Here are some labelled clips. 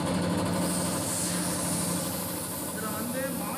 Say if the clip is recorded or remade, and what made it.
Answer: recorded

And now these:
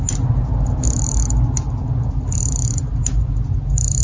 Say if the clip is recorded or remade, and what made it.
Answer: recorded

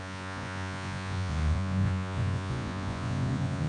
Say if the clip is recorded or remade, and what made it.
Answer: remade, vocoder, Vocos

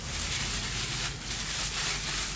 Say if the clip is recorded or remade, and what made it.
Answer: recorded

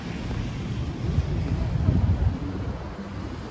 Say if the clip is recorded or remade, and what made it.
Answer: recorded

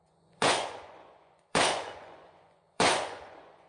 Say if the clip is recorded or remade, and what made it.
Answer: remade, vocoder, Vocos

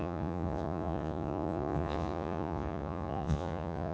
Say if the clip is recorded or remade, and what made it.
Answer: remade, vocoder, Vocos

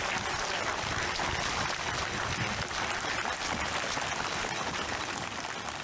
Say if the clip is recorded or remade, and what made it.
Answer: recorded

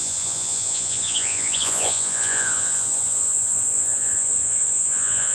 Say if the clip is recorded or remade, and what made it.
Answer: remade, vocoder, Vocos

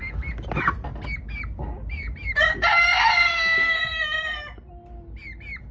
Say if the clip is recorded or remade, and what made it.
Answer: recorded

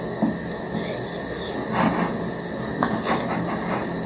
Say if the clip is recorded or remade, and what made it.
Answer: recorded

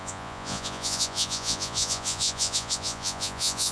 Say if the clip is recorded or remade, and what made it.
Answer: remade, vocoder, Vocos